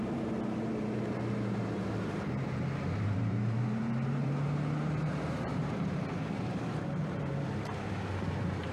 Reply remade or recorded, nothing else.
remade